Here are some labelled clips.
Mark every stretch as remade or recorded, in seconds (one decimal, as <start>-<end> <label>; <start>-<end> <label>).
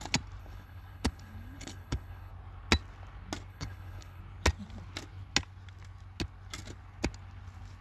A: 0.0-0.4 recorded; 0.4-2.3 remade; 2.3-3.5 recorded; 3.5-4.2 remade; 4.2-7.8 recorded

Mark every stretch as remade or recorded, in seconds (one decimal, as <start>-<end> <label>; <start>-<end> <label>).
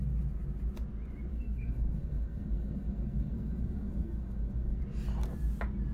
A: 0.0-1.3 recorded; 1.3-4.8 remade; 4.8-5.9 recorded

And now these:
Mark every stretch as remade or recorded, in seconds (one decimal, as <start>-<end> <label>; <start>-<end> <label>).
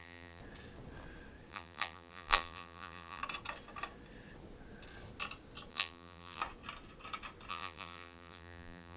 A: 0.0-0.4 remade; 0.4-1.5 recorded; 1.5-3.2 remade; 3.2-5.7 recorded; 5.7-6.4 remade; 6.4-7.5 recorded; 7.5-9.0 remade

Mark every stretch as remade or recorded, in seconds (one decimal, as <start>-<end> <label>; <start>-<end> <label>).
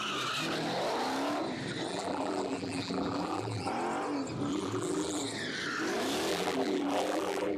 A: 0.0-1.9 recorded; 1.9-3.7 remade; 3.7-4.5 recorded; 4.5-5.2 remade; 5.2-6.3 recorded; 6.3-7.6 remade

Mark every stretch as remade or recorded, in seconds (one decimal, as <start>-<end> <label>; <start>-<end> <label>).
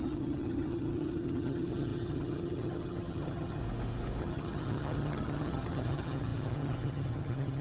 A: 0.0-3.6 remade; 3.6-4.2 recorded; 4.2-7.6 remade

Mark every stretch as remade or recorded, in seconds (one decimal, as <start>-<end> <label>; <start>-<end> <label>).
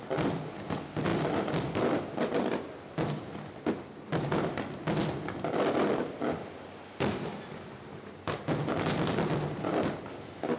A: 0.0-10.6 recorded